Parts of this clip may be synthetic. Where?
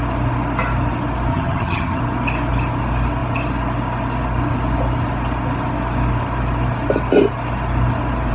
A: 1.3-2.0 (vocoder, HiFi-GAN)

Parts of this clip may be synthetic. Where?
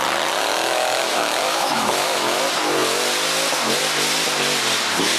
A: 0.5-2.4 (autoencoder, DAC-VAE)